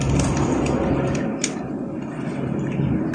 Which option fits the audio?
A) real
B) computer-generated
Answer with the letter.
A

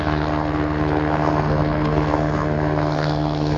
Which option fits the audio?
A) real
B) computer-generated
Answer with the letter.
B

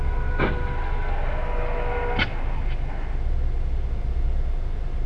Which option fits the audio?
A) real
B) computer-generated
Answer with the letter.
A